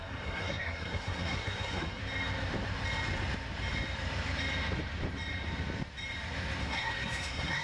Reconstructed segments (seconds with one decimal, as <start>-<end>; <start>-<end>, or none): 0.0-2.0; 6.6-7.6